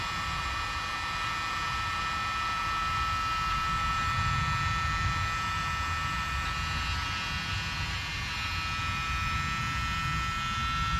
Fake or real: real